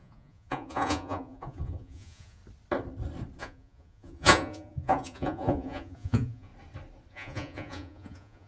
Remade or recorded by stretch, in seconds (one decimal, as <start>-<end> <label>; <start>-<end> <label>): 0.0-2.4 remade; 2.4-3.4 recorded; 3.4-6.5 remade; 6.5-7.1 recorded; 7.1-8.5 remade